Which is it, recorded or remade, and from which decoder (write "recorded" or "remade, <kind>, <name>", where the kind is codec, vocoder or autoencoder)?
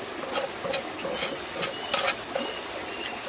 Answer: recorded